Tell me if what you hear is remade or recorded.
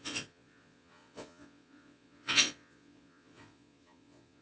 remade